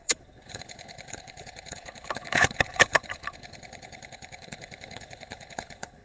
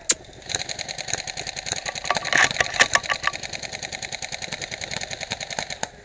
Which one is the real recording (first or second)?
second